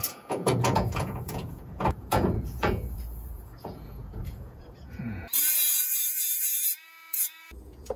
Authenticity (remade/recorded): remade